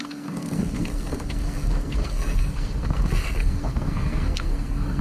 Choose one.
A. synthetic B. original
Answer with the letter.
A